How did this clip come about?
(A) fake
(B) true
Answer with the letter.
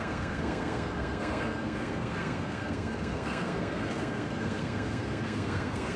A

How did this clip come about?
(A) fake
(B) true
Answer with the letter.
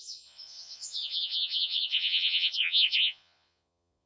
A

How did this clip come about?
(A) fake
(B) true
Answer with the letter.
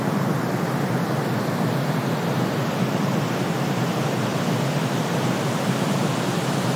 B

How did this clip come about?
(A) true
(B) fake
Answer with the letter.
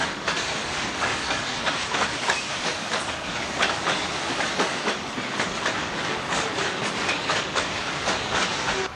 B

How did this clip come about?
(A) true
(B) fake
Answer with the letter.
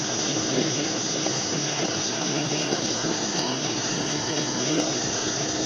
B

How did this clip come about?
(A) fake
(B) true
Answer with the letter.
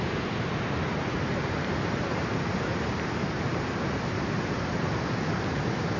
A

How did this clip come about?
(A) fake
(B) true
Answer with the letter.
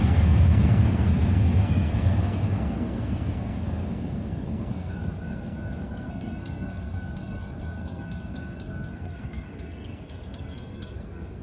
A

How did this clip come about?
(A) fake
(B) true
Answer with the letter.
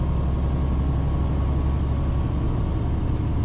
B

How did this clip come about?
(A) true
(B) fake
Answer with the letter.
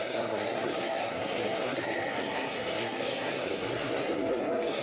B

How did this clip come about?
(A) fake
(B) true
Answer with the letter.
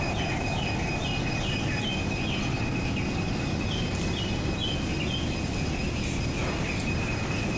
B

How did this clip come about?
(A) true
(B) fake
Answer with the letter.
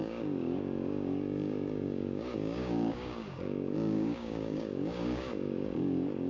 B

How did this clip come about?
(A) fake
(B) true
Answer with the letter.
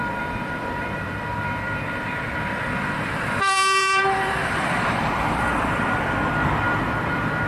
A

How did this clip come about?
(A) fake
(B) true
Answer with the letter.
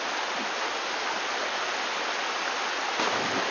B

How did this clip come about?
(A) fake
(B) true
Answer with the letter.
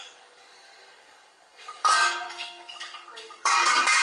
A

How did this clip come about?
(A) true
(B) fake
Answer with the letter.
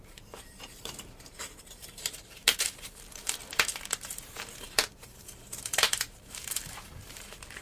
B